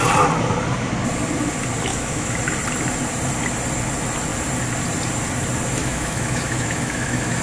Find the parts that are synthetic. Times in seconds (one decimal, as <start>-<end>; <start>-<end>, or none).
1.9-2.4; 5.8-7.4